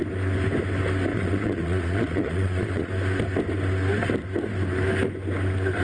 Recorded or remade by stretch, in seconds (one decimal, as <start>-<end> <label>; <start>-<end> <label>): 0.0-1.1 recorded; 1.1-2.9 remade; 2.9-5.8 recorded